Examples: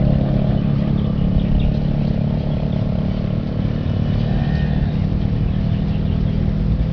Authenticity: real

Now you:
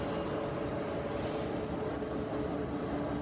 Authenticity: real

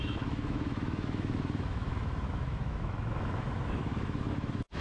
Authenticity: fake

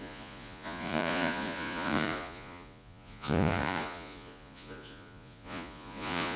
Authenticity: fake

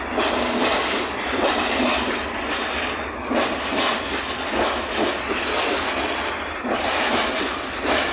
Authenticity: real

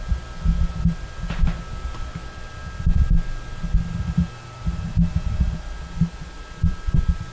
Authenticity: real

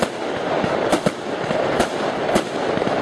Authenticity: fake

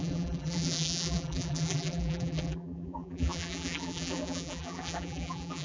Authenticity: fake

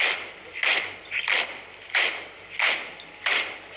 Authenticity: real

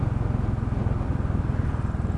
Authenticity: real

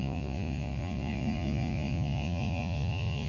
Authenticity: fake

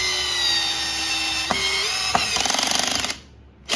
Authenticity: real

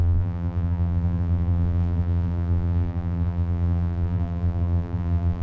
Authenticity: fake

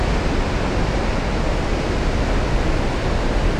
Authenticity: real